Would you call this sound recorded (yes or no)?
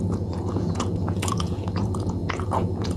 no